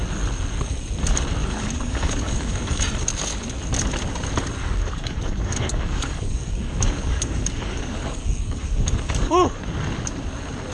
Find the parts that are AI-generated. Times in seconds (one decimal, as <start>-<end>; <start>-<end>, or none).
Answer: 1.4-2.8; 4.6-9.6